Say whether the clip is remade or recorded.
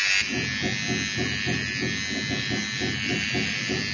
recorded